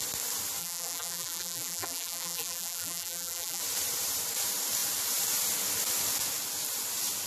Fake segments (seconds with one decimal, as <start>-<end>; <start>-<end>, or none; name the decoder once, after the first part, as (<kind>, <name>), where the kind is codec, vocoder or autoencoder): 0.6-3.6 (vocoder, BigVGAN v2)